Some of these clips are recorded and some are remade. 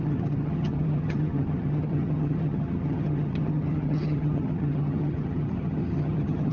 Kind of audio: remade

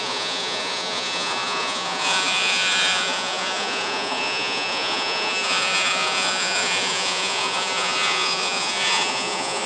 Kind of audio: remade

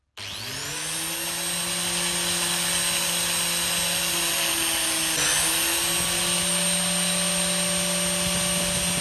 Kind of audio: recorded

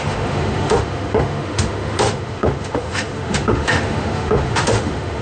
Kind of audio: remade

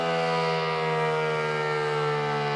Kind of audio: recorded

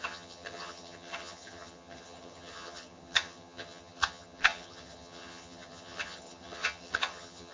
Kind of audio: remade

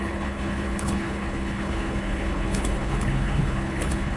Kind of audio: remade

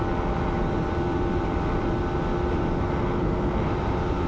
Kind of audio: recorded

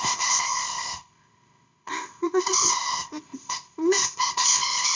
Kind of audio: remade